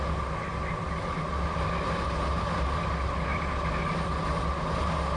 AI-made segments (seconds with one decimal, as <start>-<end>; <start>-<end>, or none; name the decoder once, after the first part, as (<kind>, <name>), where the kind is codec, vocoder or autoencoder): none